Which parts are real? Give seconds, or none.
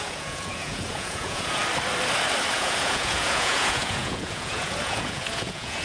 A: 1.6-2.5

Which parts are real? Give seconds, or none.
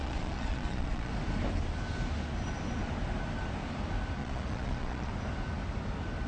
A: 1.1-4.2; 5.1-6.3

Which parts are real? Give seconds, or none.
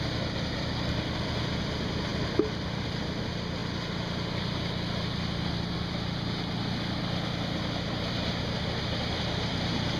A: 0.0-10.0